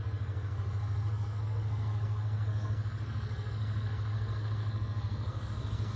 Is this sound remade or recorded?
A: remade